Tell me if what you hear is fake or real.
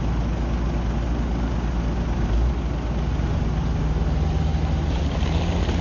real